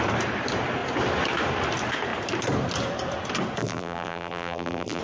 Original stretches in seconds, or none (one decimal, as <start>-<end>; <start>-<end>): 0.0-3.6